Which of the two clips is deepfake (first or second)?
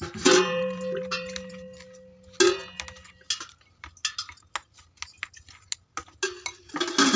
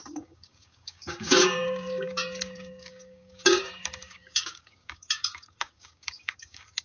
second